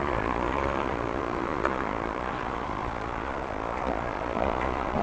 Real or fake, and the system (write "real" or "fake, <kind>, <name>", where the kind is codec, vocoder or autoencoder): fake, vocoder, Vocos